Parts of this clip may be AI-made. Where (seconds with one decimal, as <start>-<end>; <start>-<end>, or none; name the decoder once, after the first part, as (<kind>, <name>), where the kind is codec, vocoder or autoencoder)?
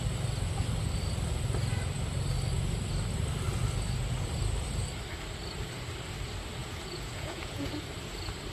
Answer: 6.6-7.7 (vocoder, Vocos)